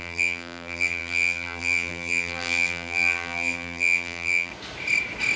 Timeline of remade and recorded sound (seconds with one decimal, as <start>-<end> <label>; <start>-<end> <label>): 0.0-4.5 remade; 4.5-5.4 recorded